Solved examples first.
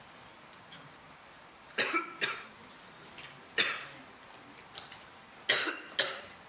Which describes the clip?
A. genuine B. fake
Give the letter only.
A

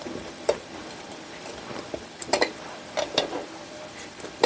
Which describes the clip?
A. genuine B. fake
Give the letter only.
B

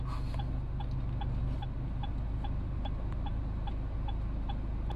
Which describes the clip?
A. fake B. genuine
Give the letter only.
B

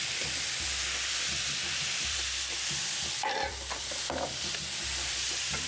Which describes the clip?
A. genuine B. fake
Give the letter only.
B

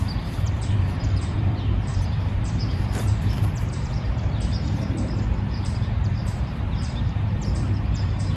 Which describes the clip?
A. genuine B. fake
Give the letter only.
B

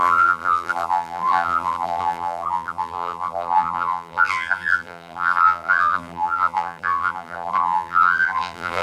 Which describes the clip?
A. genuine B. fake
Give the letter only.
B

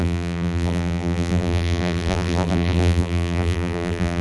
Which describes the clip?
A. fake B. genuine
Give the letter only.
A